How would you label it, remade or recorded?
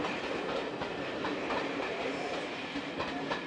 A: remade